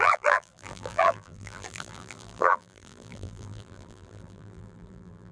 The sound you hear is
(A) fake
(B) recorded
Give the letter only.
A